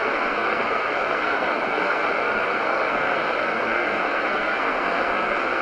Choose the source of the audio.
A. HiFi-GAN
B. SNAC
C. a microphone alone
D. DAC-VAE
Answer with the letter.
B